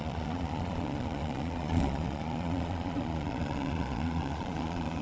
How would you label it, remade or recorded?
remade